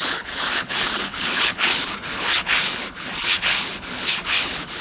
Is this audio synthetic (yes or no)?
yes